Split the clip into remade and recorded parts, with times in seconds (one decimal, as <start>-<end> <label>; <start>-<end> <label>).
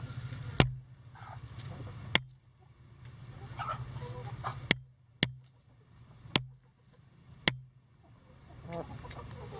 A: 0.0-9.6 recorded